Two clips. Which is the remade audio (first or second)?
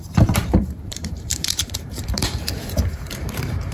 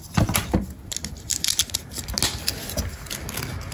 first